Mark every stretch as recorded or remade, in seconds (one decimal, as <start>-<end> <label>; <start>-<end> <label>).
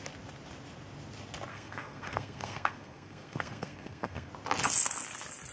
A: 0.0-1.5 recorded; 1.5-4.3 remade; 4.3-5.5 recorded